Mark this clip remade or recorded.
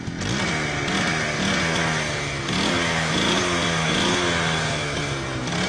recorded